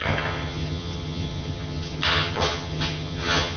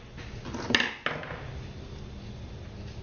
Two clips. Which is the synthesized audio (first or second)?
first